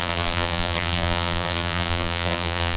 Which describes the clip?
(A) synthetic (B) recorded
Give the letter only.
A